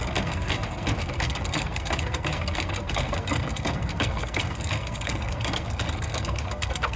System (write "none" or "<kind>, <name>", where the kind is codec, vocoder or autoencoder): codec, SNAC